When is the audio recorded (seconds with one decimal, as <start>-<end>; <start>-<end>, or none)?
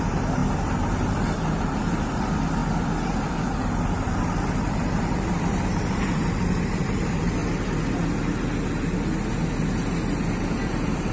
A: 7.4-10.4